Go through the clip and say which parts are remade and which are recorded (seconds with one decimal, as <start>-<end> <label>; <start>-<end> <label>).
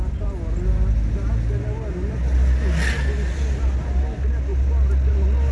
0.0-5.5 recorded